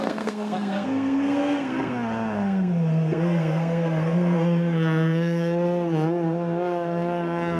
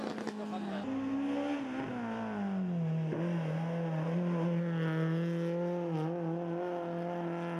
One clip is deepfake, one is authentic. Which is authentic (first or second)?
second